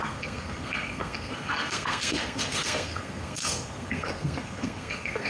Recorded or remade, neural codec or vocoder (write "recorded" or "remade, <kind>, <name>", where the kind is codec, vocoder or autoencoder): remade, codec, SNAC